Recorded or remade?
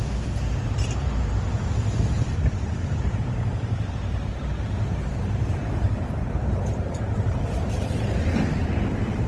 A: remade